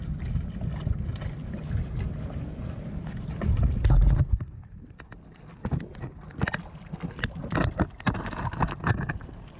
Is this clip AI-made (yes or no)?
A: no